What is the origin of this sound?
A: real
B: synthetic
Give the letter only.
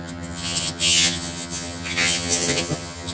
B